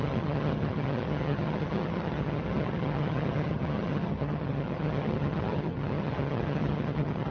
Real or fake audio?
fake